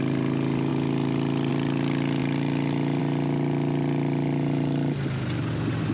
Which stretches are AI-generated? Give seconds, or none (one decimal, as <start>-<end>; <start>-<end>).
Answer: none

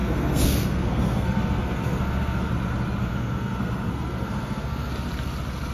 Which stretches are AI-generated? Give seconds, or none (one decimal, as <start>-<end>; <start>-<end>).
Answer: 0.0-2.5; 3.0-4.9

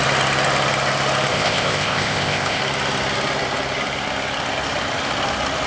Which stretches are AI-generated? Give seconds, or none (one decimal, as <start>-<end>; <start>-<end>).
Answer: 1.3-2.6

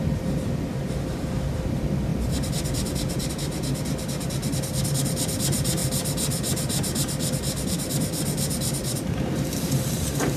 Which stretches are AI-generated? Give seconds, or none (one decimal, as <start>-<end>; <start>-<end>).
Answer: 0.0-10.4

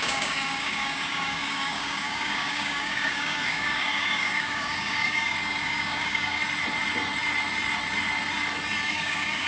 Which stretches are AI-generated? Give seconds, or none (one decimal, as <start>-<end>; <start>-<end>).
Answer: 0.0-6.4; 8.9-9.5

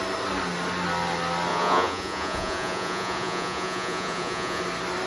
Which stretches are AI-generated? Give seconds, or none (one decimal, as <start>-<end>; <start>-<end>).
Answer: 1.5-4.6